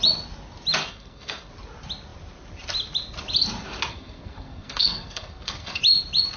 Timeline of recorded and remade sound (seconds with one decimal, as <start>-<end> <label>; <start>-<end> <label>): 0.0-0.8 recorded; 0.8-1.5 remade; 1.5-3.9 recorded; 3.9-5.8 remade; 5.8-6.4 recorded